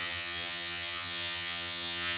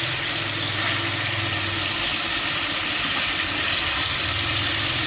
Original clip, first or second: second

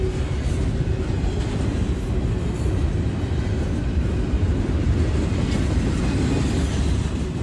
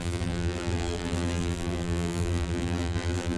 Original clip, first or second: first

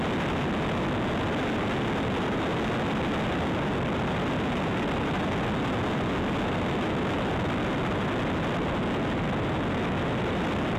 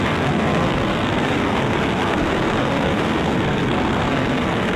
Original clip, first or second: first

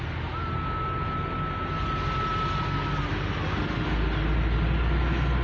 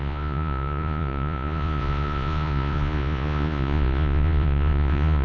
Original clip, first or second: first